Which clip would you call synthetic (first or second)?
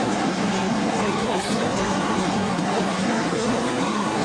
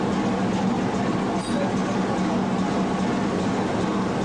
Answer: first